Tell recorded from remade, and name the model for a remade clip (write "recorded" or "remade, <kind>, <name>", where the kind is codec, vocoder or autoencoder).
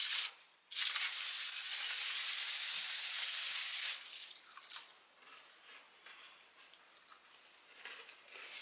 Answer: recorded